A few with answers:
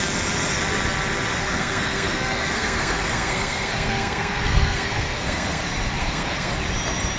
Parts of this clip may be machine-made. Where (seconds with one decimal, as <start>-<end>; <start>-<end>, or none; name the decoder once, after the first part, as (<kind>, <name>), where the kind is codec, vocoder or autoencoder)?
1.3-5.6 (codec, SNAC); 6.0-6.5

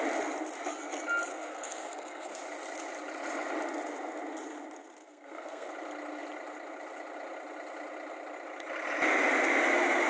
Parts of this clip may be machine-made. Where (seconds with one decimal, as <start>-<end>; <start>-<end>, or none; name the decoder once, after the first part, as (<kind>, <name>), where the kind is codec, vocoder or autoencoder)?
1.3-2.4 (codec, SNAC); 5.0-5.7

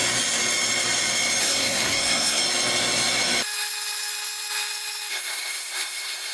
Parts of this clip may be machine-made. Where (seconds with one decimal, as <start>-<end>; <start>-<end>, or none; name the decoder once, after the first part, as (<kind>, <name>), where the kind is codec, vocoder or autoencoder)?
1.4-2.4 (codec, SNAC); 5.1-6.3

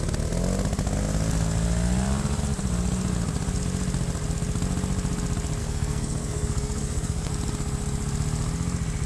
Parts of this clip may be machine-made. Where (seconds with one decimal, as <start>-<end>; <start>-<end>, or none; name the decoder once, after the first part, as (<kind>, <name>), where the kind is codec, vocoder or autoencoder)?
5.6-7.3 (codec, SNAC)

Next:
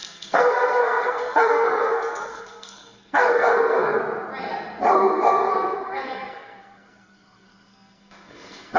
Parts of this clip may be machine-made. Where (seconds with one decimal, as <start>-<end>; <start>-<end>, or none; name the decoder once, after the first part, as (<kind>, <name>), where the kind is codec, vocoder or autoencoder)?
0.0-4.0 (codec, SNAC); 4.8-8.8

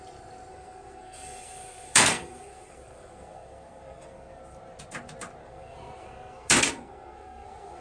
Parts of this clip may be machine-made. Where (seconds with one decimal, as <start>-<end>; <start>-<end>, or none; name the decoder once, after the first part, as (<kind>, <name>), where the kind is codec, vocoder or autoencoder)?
0.5-4.4 (codec, SNAC); 5.4-7.8

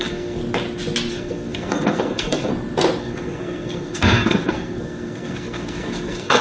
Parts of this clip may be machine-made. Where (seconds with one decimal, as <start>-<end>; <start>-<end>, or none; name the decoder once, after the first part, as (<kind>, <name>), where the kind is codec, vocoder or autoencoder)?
0.0-0.4 (codec, SNAC); 1.1-2.5; 3.0-6.4

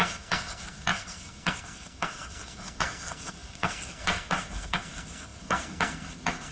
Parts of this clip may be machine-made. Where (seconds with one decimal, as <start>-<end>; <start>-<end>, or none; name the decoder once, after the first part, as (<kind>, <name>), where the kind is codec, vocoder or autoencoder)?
0.0-6.5 (codec, SNAC)